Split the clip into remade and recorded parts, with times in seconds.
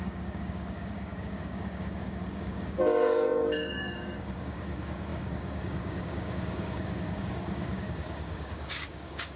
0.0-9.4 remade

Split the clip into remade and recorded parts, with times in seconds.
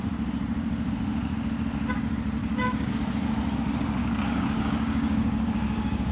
0.0-2.4 recorded; 2.4-3.0 remade; 3.0-4.0 recorded; 4.0-6.1 remade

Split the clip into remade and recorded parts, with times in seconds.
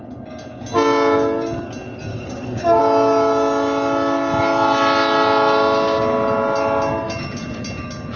0.0-2.1 recorded; 2.1-2.8 remade; 2.8-8.2 recorded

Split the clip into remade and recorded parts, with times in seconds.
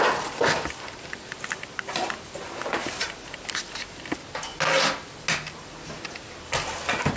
0.0-7.2 recorded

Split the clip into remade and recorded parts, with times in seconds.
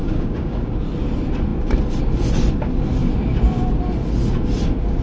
0.0-0.7 remade; 0.7-5.0 recorded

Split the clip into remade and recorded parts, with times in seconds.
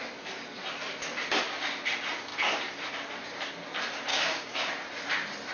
0.0-4.1 recorded; 4.1-4.7 remade; 4.7-5.5 recorded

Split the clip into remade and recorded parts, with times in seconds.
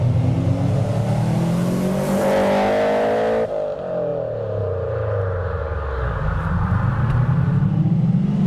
0.0-5.6 recorded; 5.6-6.7 remade; 6.7-8.5 recorded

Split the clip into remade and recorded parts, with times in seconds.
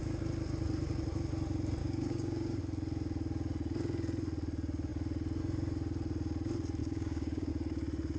0.0-1.8 recorded; 1.8-2.6 remade; 2.6-6.8 recorded; 6.8-7.5 remade; 7.5-8.2 recorded